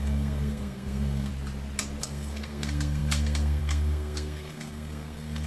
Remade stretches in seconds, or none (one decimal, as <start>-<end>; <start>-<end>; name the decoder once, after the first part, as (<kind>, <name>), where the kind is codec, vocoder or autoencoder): 0.0-1.3 (codec, SNAC); 2.0-5.5